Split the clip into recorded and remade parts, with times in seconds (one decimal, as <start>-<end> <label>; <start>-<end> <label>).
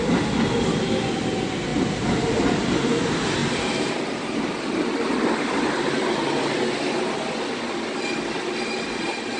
0.0-1.7 recorded; 1.7-2.7 remade; 2.7-3.4 recorded; 3.4-4.6 remade; 4.6-9.4 recorded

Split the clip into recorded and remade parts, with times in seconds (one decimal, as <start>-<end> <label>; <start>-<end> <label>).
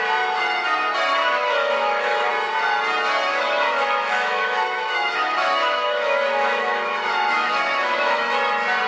0.0-1.2 recorded; 1.2-2.3 remade; 2.3-3.3 recorded; 3.3-8.2 remade; 8.2-8.9 recorded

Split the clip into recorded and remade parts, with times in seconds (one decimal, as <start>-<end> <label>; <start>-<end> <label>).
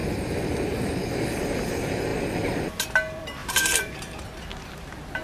0.0-3.4 recorded; 3.4-4.2 remade; 4.2-5.2 recorded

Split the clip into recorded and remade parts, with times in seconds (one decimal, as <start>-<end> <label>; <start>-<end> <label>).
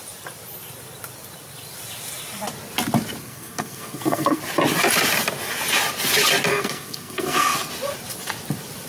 0.0-3.2 recorded; 3.2-4.4 remade; 4.4-6.5 recorded; 6.5-7.7 remade; 7.7-8.9 recorded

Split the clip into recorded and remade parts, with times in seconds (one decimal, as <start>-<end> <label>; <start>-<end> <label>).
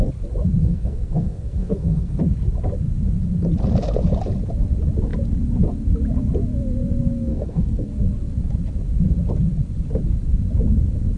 0.0-0.6 recorded; 0.6-2.2 remade; 2.2-7.3 recorded; 7.3-7.9 remade; 7.9-11.2 recorded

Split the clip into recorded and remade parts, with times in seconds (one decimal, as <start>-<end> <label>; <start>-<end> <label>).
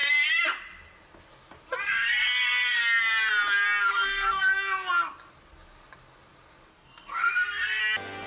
0.0-1.8 recorded; 1.8-2.8 remade; 2.8-3.9 recorded; 3.9-4.5 remade; 4.5-6.7 recorded; 6.7-7.8 remade; 7.8-8.3 recorded